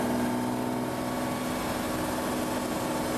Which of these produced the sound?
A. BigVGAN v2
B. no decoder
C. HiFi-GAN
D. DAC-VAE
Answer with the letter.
B